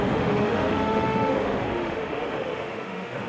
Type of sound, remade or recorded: remade